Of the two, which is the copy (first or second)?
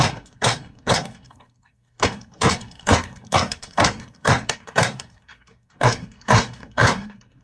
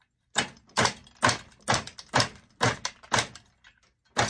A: first